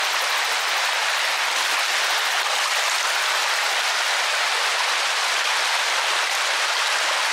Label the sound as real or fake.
real